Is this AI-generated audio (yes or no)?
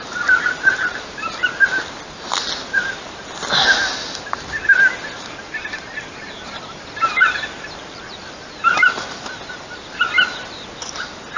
no